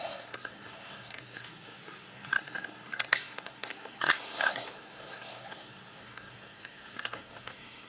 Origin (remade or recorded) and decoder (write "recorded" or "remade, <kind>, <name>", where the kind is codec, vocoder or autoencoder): remade, codec, SNAC